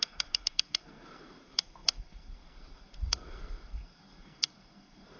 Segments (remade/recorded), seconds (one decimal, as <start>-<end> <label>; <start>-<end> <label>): 0.0-5.2 remade